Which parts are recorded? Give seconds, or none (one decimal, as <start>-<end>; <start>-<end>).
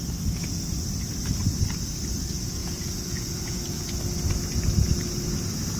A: 0.0-2.6; 3.9-5.8